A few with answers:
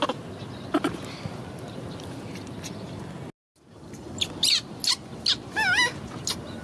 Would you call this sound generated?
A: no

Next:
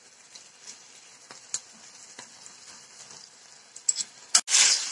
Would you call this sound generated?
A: no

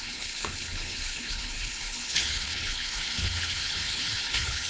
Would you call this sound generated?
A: yes